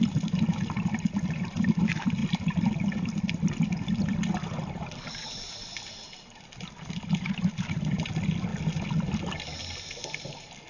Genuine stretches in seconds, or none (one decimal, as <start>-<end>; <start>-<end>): 0.0-10.7